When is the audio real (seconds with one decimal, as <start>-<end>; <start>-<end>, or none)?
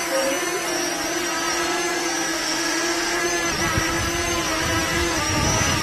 0.0-2.3; 3.2-5.8